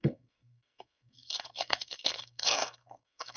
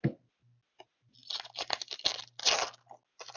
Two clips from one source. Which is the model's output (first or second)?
first